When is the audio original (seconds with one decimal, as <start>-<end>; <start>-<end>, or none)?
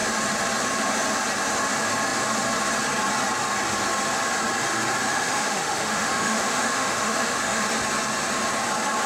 0.0-5.1; 7.6-9.1